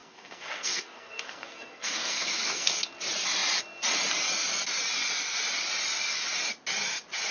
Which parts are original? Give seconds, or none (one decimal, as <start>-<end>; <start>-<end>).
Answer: 2.8-7.3